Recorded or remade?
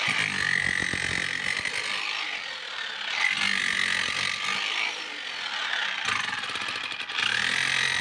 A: recorded